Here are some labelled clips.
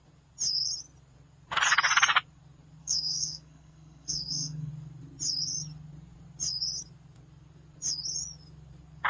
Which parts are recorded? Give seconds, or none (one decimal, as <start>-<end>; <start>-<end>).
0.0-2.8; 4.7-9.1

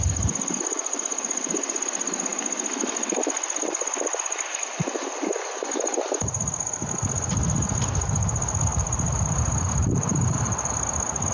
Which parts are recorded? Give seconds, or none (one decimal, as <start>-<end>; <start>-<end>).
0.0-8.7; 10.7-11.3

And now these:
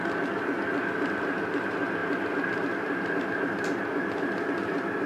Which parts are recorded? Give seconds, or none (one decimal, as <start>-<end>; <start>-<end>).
0.0-5.1

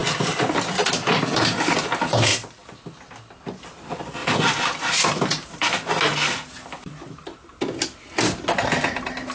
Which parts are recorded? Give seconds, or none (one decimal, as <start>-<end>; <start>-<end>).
0.0-9.3

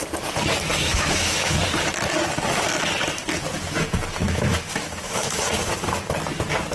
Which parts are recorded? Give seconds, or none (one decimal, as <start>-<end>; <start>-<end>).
0.0-0.7; 1.6-4.2; 5.4-6.7

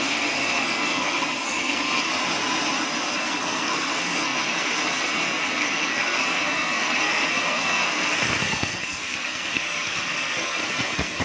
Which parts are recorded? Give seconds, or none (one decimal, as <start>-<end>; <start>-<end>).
2.1-3.1

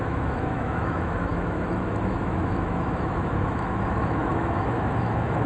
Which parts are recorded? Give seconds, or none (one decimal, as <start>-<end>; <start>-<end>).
none

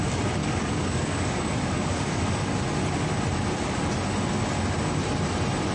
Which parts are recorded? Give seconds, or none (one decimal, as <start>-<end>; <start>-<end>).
0.0-0.4; 2.5-5.7